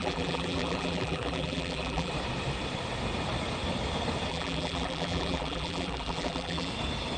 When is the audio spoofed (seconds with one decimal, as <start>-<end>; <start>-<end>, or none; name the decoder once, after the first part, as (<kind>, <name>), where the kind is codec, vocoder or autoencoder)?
0.0-2.1 (vocoder, BigVGAN v2); 4.3-6.7